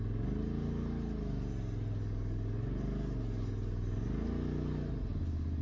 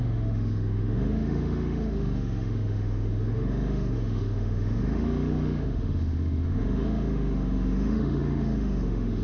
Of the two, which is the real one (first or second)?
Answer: first